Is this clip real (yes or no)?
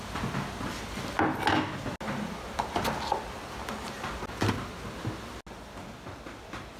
yes